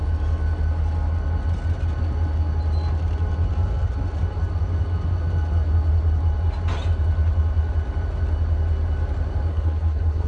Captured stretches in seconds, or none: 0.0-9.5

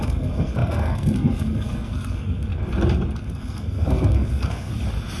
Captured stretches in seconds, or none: 2.5-3.2; 4.7-5.2

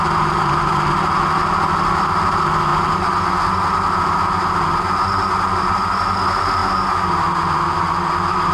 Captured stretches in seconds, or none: 0.0-8.5

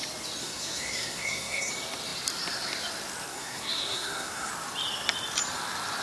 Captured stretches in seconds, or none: 0.0-0.4; 1.7-3.3; 4.5-6.0

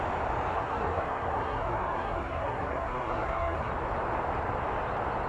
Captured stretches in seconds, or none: 0.0-0.5; 3.7-5.3